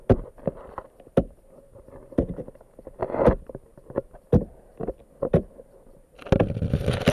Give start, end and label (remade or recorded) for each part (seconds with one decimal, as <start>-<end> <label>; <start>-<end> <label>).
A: 0.0-7.1 recorded